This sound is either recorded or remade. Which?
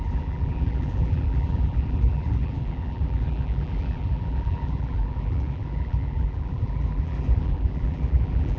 remade